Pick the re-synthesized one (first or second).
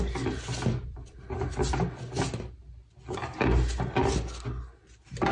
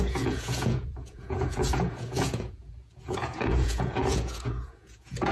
second